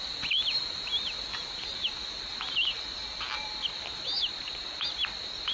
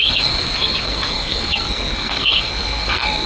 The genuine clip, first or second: first